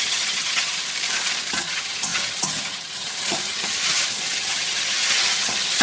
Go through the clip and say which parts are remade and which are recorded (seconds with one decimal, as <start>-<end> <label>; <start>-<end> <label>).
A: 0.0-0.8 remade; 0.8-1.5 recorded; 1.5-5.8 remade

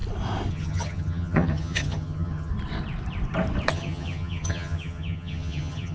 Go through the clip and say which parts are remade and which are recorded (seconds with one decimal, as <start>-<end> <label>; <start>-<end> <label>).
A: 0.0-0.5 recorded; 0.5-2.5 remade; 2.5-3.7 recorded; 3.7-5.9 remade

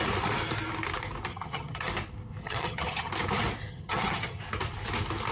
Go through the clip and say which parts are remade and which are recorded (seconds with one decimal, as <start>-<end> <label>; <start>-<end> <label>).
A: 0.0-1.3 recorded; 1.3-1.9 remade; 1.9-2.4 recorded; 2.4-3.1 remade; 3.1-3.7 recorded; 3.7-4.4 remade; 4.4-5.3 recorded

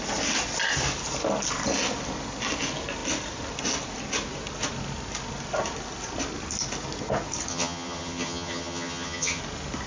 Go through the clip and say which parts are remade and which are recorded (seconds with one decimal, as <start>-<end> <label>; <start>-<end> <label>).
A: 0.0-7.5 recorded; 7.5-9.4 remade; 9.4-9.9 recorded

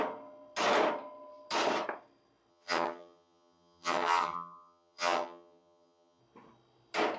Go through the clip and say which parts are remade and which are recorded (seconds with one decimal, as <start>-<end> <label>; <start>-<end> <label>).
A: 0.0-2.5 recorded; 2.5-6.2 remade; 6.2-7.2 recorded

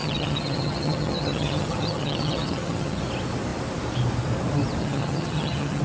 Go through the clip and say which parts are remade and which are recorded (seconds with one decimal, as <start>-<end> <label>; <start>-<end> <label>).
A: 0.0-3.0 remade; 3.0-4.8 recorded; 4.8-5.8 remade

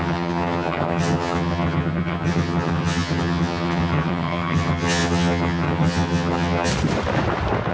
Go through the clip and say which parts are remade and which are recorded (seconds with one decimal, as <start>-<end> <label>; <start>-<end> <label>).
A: 0.0-6.7 remade; 6.7-7.7 recorded